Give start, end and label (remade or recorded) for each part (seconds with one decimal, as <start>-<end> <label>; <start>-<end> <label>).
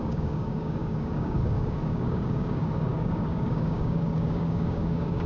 0.0-5.3 remade